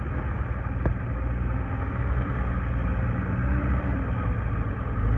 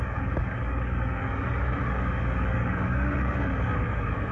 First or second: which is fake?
second